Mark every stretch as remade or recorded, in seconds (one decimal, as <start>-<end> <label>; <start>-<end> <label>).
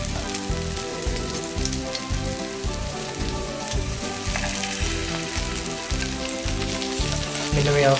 0.0-0.9 recorded; 0.9-1.4 remade; 1.4-2.8 recorded; 2.8-4.1 remade; 4.1-8.0 recorded